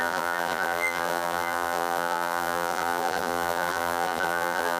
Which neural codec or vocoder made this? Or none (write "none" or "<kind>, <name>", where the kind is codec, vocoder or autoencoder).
vocoder, BigVGAN v2